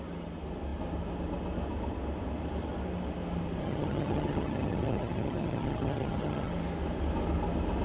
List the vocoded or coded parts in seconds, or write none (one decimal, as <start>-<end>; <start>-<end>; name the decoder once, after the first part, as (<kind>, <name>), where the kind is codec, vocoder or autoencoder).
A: 3.6-6.5 (vocoder, HiFi-GAN)